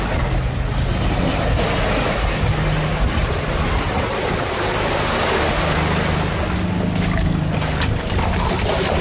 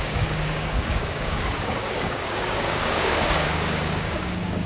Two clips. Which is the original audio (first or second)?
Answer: first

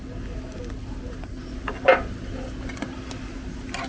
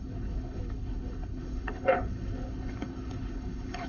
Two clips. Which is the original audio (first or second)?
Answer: first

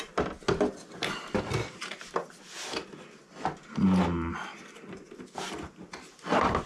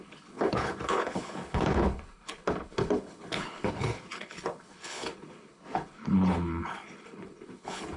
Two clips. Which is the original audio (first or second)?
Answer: first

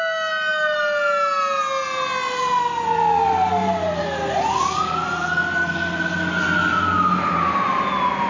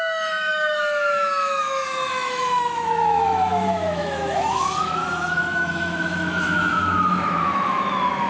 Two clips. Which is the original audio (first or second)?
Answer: first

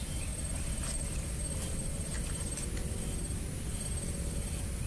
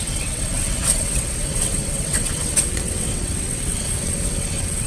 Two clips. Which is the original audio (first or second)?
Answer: first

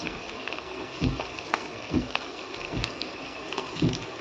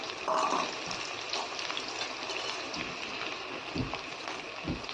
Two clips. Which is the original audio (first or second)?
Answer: second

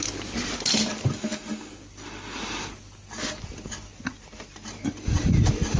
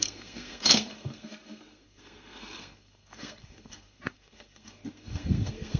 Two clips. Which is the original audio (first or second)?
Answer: first